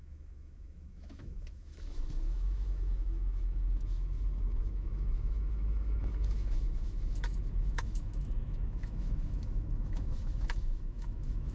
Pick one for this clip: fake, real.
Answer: fake